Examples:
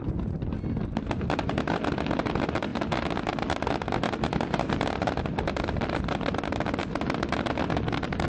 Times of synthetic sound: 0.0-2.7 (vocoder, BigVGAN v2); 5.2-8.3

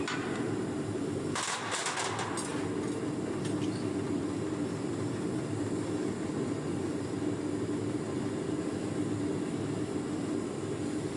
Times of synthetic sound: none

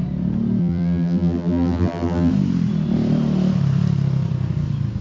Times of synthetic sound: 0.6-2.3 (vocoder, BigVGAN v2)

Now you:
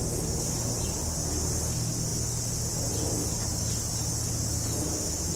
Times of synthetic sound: none

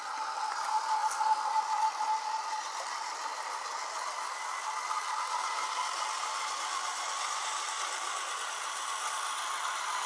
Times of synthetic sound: none

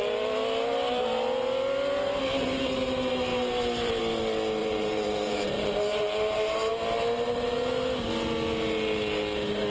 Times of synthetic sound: 3.3-4.0 (vocoder, BigVGAN v2); 4.6-6.7